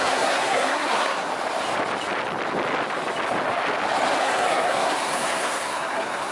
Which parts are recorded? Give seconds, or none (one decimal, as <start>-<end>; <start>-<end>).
1.3-4.2